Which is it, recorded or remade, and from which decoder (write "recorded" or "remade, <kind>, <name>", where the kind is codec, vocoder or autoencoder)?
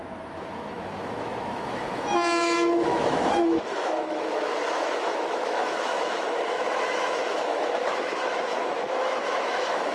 remade, autoencoder, DAC-VAE